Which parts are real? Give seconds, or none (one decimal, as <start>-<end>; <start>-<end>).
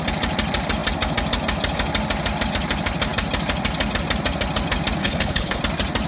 0.0-5.0; 5.6-6.1